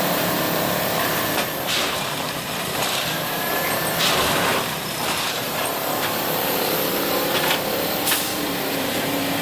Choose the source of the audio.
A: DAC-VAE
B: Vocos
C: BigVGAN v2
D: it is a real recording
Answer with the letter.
C